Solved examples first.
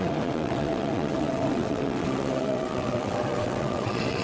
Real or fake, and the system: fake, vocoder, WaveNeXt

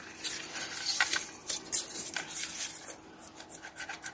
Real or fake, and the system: real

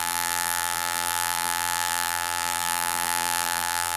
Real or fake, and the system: fake, vocoder, BigVGAN v2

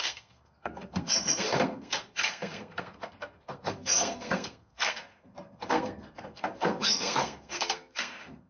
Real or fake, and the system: fake, codec, SNAC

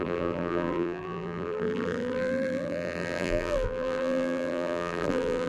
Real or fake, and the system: fake, vocoder, BigVGAN v2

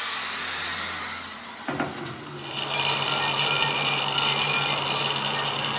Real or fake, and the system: real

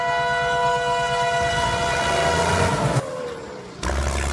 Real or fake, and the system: real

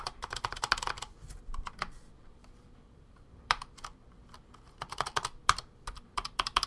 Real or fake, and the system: fake, vocoder, BigVGAN v2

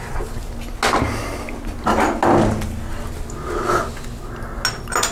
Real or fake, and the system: real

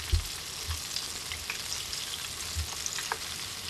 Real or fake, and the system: real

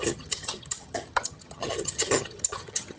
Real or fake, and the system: fake, vocoder, HiFi-GAN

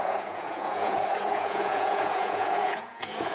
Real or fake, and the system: fake, vocoder, Vocos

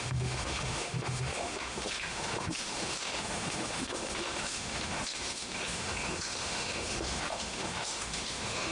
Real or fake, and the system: fake, autoencoder, DAC-VAE